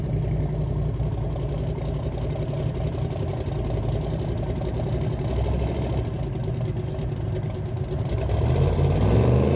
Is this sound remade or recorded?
recorded